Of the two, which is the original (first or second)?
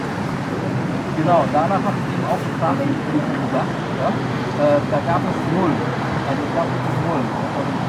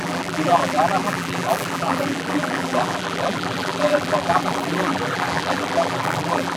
first